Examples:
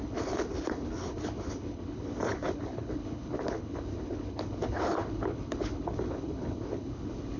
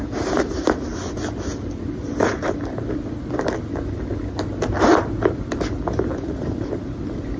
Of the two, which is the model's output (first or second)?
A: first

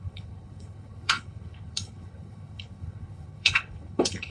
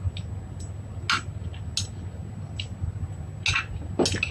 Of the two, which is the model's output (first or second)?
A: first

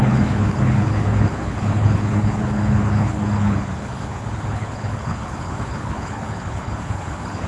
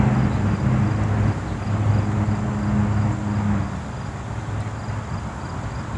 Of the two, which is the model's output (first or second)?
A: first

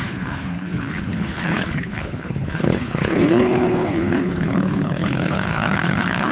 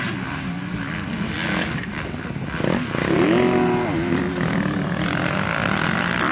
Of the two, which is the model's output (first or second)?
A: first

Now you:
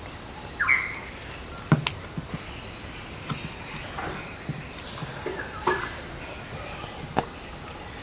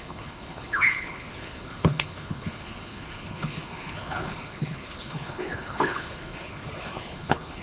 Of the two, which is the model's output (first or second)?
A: second